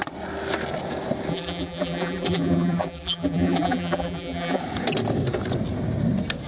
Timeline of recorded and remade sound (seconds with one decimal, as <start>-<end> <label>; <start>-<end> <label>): 0.0-1.3 recorded; 1.3-4.6 remade; 4.6-6.5 recorded